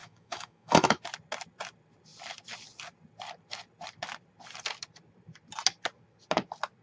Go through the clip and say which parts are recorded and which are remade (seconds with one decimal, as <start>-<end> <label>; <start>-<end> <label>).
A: 0.0-1.0 remade; 1.0-6.8 recorded

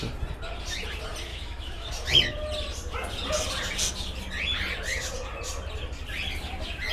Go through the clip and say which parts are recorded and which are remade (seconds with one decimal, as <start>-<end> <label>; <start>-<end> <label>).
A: 0.0-1.3 recorded; 1.3-1.9 remade; 1.9-6.9 recorded

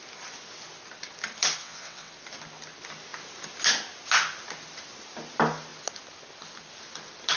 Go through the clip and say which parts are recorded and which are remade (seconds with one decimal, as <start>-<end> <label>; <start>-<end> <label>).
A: 0.0-1.6 recorded; 1.6-2.1 remade; 2.1-7.4 recorded

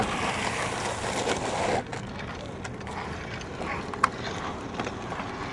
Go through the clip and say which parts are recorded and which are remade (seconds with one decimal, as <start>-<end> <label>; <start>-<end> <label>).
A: 0.0-5.5 recorded

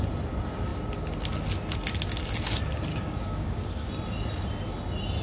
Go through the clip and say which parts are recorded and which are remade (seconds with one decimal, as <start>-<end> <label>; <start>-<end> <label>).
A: 0.0-2.9 recorded; 2.9-3.9 remade; 3.9-5.2 recorded

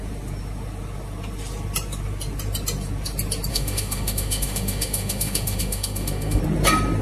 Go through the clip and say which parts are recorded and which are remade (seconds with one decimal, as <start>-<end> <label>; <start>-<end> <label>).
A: 0.0-3.5 recorded; 3.5-6.4 remade; 6.4-7.0 recorded

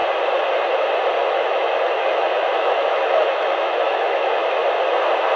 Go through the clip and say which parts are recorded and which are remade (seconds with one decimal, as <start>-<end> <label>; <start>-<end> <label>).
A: 0.0-1.3 recorded; 1.3-4.6 remade; 4.6-5.4 recorded

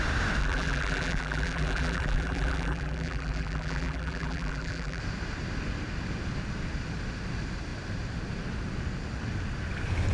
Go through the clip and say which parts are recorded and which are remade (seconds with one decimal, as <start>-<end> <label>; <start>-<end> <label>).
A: 0.0-0.4 recorded; 0.4-5.0 remade; 5.0-10.1 recorded